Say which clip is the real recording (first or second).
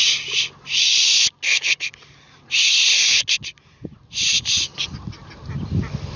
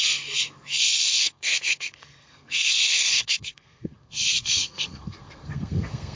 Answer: first